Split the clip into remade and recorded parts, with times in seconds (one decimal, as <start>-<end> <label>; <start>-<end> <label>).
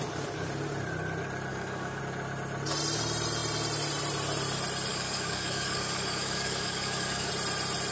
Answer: 0.0-1.5 recorded; 1.5-2.0 remade; 2.0-4.9 recorded; 4.9-7.3 remade; 7.3-7.9 recorded